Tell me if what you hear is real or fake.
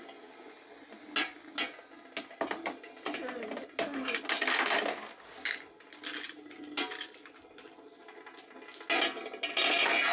real